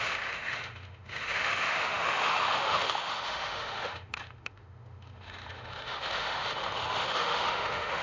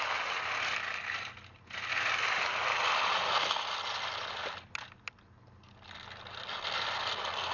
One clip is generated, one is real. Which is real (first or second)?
second